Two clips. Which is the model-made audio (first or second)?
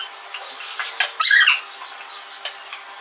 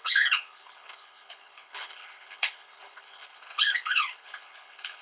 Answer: second